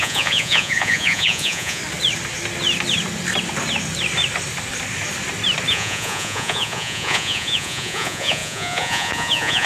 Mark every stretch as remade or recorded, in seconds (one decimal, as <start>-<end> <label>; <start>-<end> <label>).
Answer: 0.0-1.8 remade; 1.8-5.7 recorded; 5.7-9.7 remade